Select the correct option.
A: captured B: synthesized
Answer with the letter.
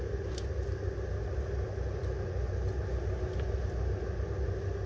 A